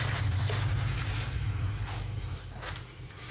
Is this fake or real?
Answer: real